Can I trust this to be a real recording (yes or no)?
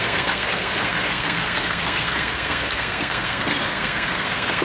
no